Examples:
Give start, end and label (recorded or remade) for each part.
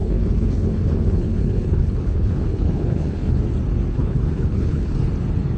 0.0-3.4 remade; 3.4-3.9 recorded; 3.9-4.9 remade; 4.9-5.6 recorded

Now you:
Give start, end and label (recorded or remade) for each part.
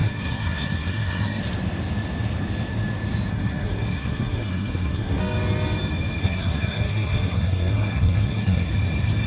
0.0-1.4 remade; 1.4-3.3 recorded; 3.3-5.2 remade; 5.2-6.2 recorded; 6.2-8.7 remade; 8.7-9.3 recorded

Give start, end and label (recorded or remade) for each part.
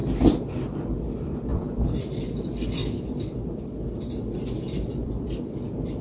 0.0-0.9 recorded; 0.9-1.5 remade; 1.5-2.0 recorded; 2.0-2.8 remade; 2.8-4.8 recorded; 4.8-6.0 remade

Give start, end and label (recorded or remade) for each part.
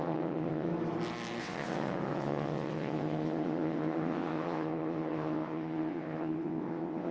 0.0-0.7 remade; 0.7-1.4 recorded; 1.4-7.1 remade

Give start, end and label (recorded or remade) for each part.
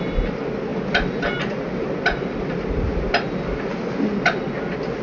0.0-5.0 recorded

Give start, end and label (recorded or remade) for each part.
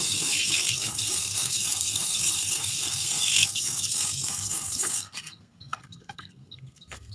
0.0-7.1 remade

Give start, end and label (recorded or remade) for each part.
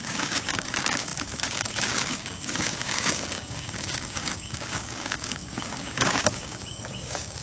0.0-7.4 remade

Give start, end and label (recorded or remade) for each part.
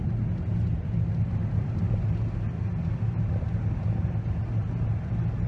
0.0-5.5 recorded